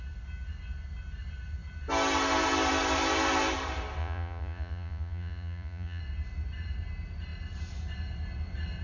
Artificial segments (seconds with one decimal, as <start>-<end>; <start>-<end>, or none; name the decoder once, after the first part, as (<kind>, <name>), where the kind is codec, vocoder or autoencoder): 4.0-6.0 (vocoder, Vocos)